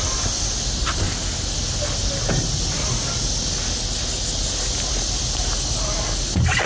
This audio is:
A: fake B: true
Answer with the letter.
B